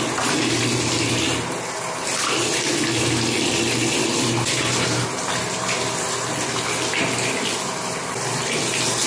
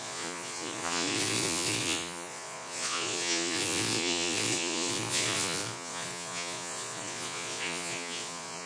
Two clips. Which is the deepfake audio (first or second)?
second